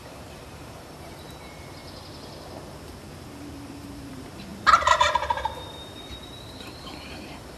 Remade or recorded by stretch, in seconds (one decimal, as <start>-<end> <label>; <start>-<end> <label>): 0.0-1.8 remade; 1.8-4.1 recorded; 4.1-7.6 remade

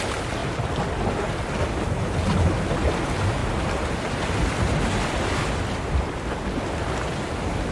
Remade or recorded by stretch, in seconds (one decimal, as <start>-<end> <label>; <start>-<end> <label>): 0.0-3.4 recorded; 3.4-7.3 remade; 7.3-7.7 recorded

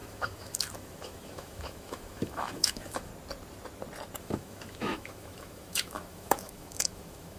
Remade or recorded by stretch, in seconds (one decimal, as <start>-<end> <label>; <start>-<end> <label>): 0.0-3.1 remade; 3.1-4.2 recorded; 4.2-7.4 remade

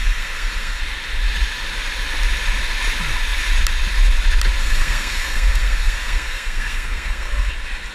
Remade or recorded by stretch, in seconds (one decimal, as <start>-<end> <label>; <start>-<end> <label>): 0.0-0.8 remade; 0.8-4.6 recorded; 4.6-7.5 remade; 7.5-7.9 recorded

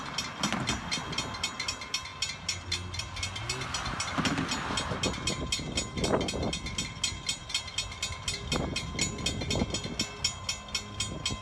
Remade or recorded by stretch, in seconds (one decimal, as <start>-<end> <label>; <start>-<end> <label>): 0.0-11.4 recorded

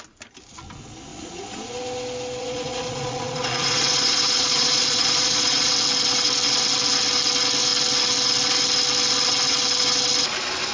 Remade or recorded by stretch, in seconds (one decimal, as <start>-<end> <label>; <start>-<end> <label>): 0.0-1.1 recorded; 1.1-1.6 remade; 1.6-2.4 recorded; 2.4-5.7 remade; 5.7-10.7 recorded